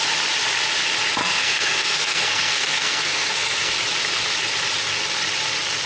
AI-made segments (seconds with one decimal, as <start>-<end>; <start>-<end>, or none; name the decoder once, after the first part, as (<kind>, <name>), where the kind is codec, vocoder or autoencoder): 1.2-3.7 (codec, SNAC)

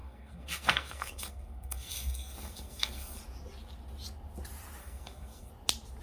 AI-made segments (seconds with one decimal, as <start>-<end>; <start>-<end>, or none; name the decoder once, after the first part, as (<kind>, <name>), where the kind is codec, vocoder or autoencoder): 0.0-3.2 (codec, SNAC); 4.8-5.5

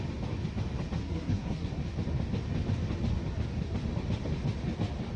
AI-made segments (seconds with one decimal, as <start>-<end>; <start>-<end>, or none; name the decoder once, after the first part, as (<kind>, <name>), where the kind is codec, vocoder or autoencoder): 1.0-1.7 (codec, SNAC)

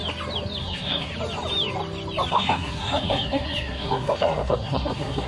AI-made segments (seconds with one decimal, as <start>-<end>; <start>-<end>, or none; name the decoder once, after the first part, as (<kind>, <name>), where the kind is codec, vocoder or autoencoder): 0.6-1.1 (codec, SNAC); 2.3-5.3